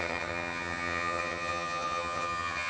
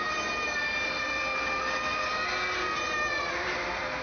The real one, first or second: second